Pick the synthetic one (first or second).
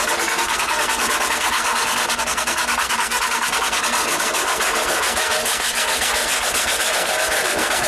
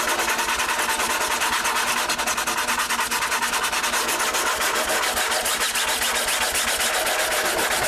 first